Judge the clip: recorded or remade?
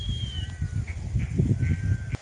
recorded